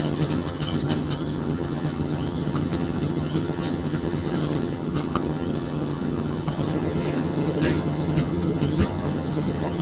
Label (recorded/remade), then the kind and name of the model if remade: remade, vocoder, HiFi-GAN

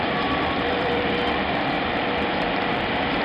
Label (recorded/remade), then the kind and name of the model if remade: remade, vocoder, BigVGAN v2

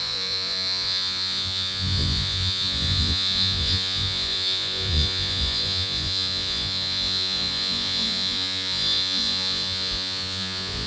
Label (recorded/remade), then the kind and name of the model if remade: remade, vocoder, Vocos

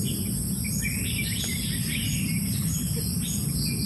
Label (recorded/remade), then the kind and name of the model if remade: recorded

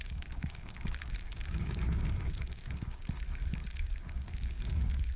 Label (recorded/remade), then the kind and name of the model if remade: remade, codec, DAC